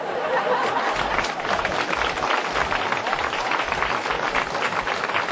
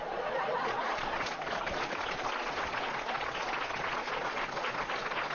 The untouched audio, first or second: first